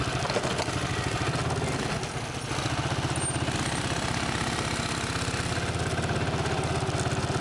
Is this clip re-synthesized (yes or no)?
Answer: no